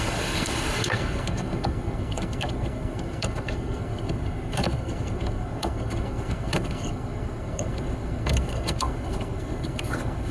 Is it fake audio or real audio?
fake